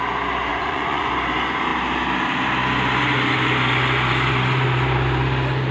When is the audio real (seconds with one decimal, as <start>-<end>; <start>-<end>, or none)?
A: 0.0-0.5; 1.1-5.7